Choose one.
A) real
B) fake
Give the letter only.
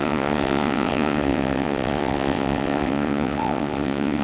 B